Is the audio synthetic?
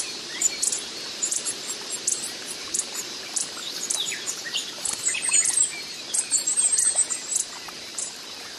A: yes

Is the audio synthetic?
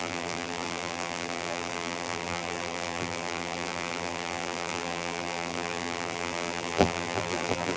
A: yes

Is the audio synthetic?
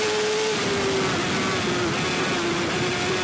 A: no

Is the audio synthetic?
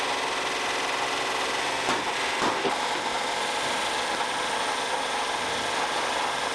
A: no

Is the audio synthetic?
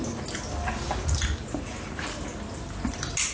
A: no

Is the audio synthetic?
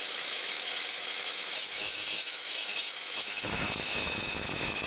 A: yes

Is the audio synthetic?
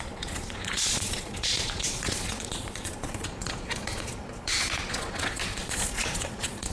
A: yes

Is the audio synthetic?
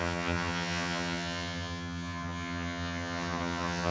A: yes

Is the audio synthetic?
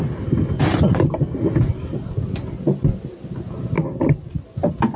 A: no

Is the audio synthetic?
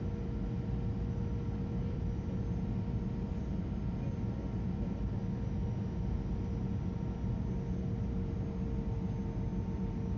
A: no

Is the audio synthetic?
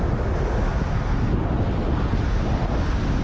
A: no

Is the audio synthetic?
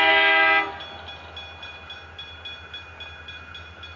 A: no